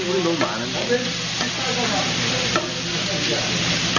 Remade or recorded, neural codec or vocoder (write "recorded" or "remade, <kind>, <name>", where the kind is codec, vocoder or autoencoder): recorded